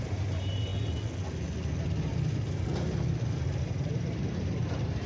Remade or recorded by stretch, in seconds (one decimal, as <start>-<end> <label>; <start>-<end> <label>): 0.0-0.7 remade; 0.7-3.6 recorded; 3.6-5.1 remade